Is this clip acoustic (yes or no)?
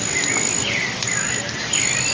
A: yes